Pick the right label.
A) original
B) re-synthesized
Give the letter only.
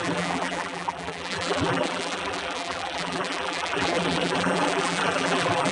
B